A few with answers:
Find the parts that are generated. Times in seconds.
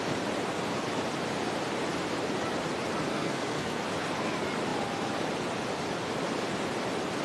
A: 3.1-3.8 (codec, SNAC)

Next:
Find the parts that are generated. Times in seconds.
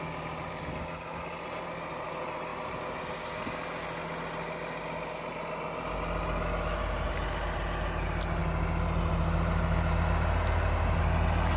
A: none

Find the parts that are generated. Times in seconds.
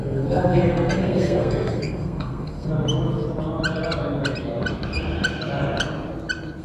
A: 0.0-2.7 (codec, SNAC)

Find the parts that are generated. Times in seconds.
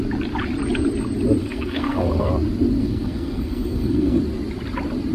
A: 1.4-2.3 (codec, SNAC); 2.8-4.2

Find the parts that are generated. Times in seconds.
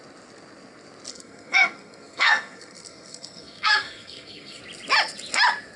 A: 1.1-4.6 (codec, SNAC)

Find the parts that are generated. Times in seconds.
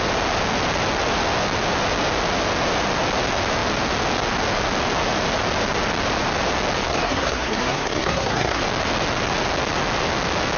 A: 6.9-8.6 (codec, SNAC)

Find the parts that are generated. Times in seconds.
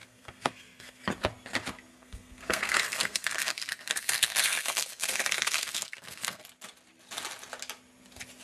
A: 0.0-1.0 (codec, SNAC); 1.9-6.4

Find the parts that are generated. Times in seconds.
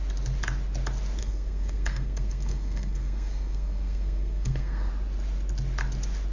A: 1.2-4.9 (codec, SNAC)